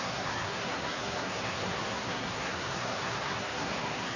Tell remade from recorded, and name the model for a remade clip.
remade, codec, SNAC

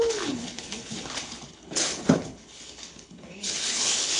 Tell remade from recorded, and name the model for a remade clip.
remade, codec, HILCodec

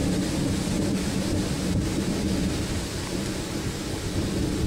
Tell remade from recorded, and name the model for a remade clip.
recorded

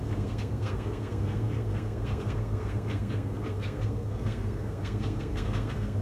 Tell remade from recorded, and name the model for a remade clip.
remade, codec, SNAC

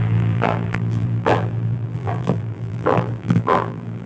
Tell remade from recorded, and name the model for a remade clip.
remade, vocoder, BigVGAN v2